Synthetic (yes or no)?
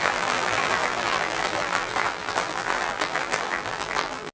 yes